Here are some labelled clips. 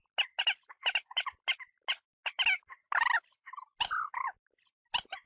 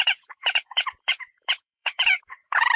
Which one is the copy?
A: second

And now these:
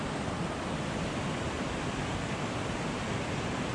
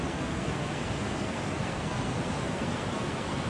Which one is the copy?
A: second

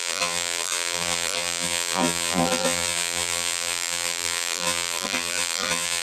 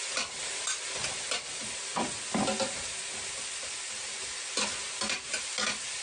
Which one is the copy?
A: first